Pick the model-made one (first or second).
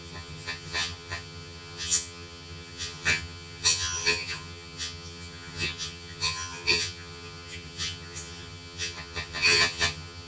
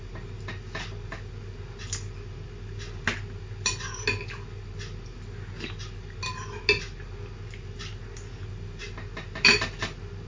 first